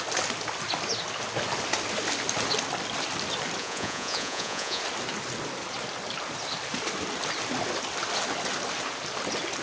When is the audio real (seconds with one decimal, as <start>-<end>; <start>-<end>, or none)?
0.0-3.6; 4.8-9.6